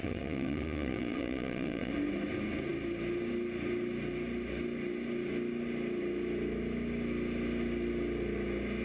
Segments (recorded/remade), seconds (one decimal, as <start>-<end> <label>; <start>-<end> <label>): 0.0-1.9 remade; 1.9-8.8 recorded